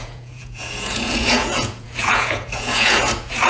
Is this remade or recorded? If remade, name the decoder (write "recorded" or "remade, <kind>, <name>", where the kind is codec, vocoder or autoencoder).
remade, vocoder, Vocos